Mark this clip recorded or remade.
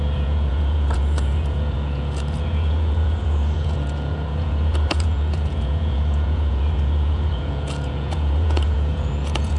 remade